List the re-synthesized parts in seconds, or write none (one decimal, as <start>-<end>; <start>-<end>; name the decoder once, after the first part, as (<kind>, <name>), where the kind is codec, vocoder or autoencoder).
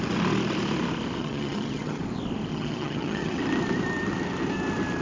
1.2-2.0 (vocoder, HiFi-GAN); 2.5-3.4